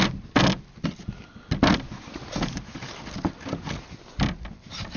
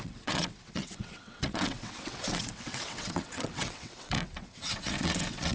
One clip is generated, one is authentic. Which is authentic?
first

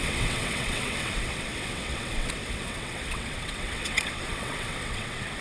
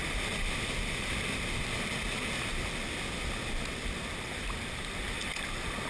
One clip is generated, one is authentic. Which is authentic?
second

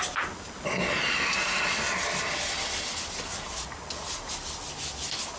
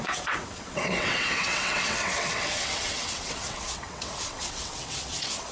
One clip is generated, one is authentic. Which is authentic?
first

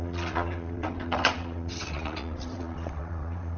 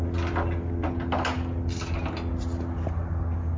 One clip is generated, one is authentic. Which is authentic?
second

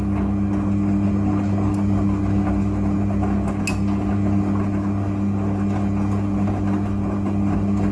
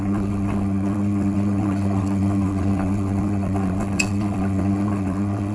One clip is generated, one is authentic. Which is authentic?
first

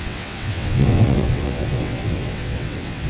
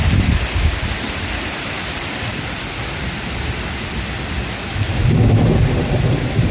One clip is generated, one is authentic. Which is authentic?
second